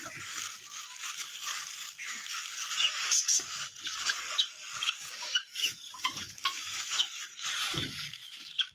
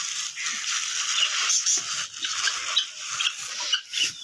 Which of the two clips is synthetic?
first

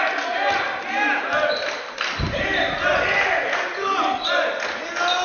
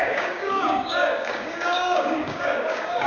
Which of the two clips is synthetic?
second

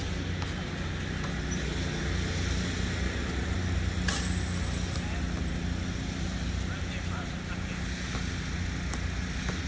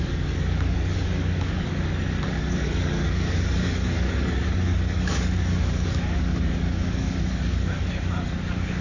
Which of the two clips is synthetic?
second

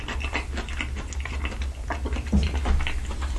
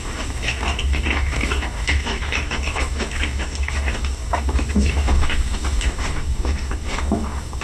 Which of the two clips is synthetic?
second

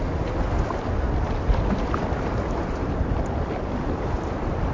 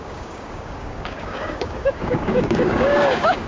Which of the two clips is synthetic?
second